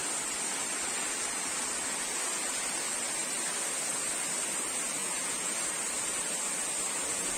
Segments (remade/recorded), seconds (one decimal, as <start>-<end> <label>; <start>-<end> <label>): 0.0-5.0 recorded; 5.0-5.5 remade; 5.5-7.4 recorded